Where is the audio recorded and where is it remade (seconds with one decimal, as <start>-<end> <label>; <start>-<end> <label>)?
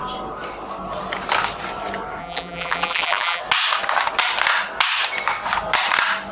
0.0-2.2 recorded; 2.2-3.4 remade; 3.4-6.3 recorded